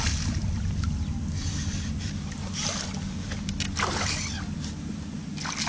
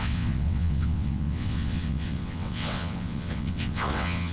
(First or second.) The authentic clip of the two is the first